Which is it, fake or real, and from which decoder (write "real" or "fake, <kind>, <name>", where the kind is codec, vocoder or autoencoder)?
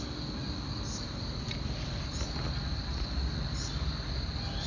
real